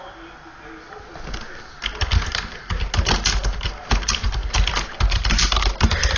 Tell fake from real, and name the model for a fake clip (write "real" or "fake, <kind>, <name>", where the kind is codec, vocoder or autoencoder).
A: real